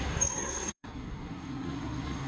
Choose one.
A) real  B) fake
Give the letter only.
B